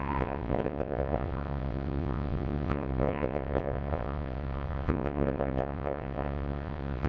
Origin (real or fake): fake